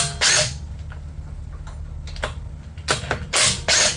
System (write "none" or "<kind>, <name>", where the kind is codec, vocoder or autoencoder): none